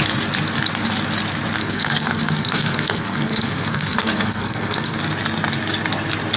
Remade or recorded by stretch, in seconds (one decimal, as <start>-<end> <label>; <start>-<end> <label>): 0.0-1.6 recorded; 1.6-5.0 remade; 5.0-6.4 recorded